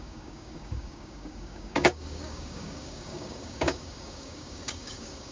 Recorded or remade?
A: remade